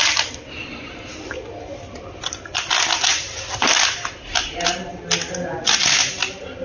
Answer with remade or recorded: recorded